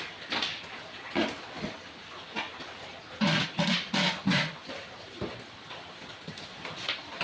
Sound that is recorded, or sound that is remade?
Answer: remade